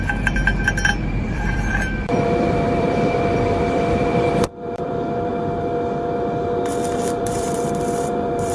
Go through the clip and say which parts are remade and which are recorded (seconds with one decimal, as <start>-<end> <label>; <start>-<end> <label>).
0.0-0.4 remade; 0.4-1.1 recorded; 1.1-5.3 remade; 5.3-7.2 recorded; 7.2-8.5 remade